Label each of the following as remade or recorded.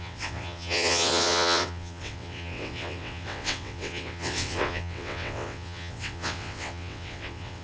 remade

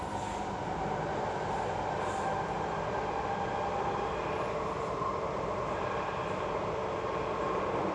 recorded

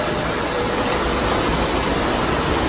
recorded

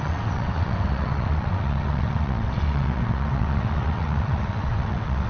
remade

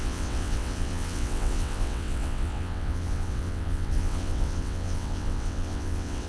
remade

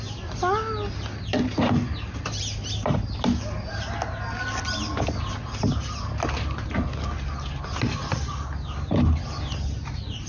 recorded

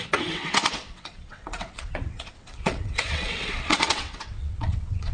remade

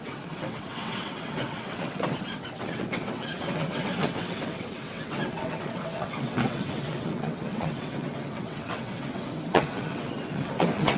remade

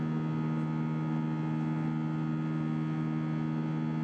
recorded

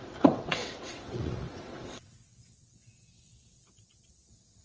remade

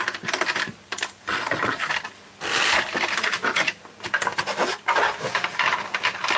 recorded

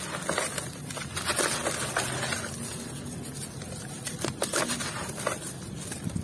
recorded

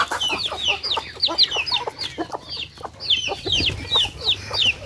recorded